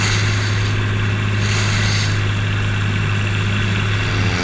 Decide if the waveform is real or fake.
real